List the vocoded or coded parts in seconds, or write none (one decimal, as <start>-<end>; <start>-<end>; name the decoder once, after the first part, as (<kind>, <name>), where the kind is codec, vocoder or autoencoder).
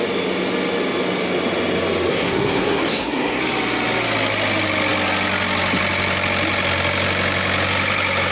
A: 2.1-3.4 (codec, SNAC)